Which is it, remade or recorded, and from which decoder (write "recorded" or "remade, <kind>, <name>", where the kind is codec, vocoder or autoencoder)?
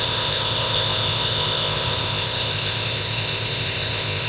remade, codec, ZipCodec